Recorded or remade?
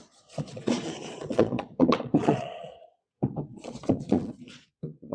remade